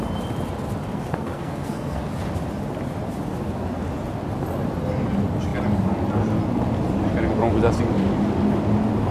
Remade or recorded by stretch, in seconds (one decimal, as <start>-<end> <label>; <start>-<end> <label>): 0.0-0.8 recorded; 0.8-2.0 remade; 2.0-9.1 recorded